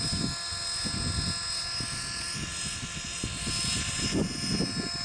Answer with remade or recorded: recorded